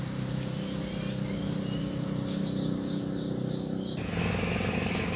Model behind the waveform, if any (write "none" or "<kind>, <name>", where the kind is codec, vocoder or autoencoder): none